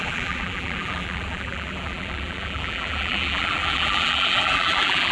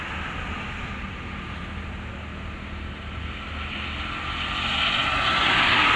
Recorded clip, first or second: second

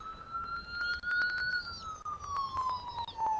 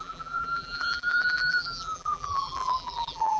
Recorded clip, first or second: first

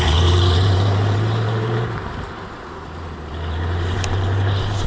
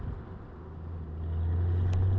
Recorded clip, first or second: second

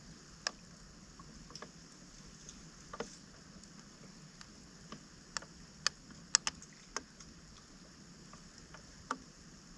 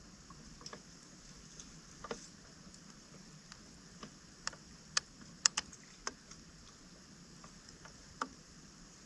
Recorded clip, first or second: first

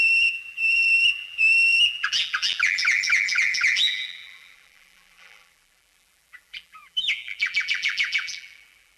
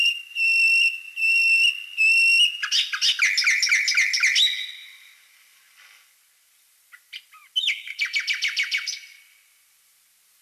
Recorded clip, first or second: second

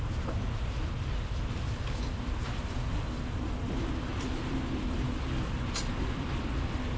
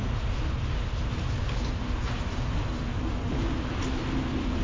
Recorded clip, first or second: second